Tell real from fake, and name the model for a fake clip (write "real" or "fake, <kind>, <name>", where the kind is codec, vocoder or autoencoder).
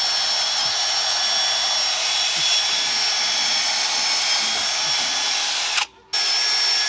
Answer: real